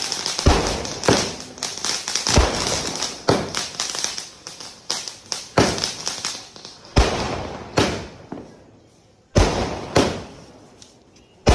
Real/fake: real